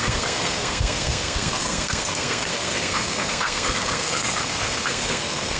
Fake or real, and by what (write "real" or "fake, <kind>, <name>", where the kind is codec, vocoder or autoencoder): fake, codec, SNAC